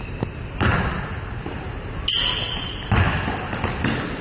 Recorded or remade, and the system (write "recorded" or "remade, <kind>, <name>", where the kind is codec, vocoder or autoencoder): recorded